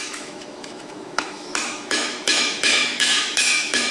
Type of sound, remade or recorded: remade